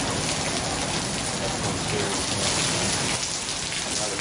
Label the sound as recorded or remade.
recorded